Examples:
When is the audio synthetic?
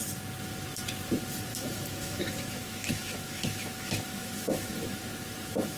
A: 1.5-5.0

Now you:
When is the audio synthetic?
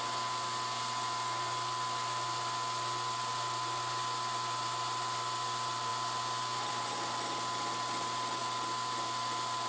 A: none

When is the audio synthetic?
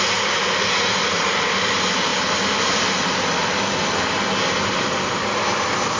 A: none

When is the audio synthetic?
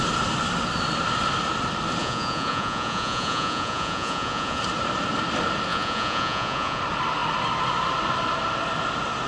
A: 2.0-4.6; 5.7-6.8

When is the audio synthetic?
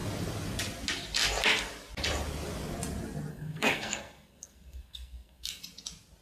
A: 3.3-5.6